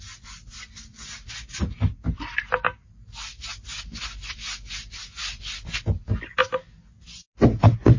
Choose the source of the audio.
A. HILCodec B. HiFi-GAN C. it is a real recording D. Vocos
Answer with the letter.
C